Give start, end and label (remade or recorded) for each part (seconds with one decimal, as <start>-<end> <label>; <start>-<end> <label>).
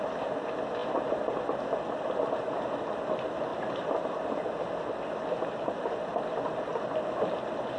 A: 0.0-0.8 recorded; 0.8-1.4 remade; 1.4-3.5 recorded; 3.5-4.3 remade; 4.3-6.7 recorded; 6.7-7.8 remade